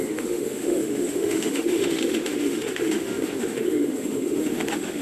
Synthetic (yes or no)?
yes